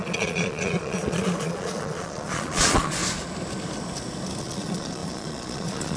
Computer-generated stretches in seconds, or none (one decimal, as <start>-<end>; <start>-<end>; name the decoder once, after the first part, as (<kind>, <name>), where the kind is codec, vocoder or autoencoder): 0.0-3.0 (vocoder, Vocos); 4.4-6.0